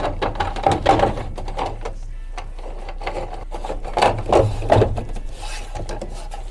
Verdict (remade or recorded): recorded